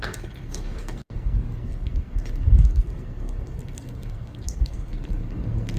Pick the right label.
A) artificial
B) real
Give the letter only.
A